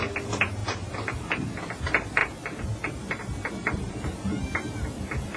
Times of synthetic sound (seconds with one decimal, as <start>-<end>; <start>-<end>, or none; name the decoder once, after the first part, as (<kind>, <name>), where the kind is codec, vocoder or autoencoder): none